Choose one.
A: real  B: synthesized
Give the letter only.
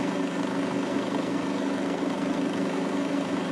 B